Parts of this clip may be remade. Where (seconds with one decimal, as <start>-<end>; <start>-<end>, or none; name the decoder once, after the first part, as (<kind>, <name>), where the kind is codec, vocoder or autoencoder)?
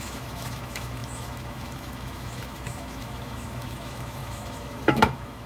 0.0-5.5 (autoencoder, DAC-VAE)